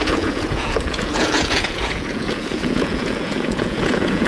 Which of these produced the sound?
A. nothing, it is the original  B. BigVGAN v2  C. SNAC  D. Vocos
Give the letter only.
D